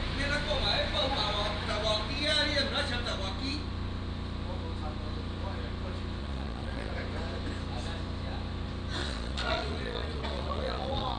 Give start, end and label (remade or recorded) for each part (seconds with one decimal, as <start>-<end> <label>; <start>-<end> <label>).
0.0-6.2 recorded; 6.2-6.9 remade; 6.9-9.0 recorded; 9.0-11.2 remade